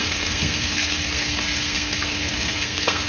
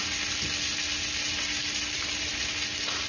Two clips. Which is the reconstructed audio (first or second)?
first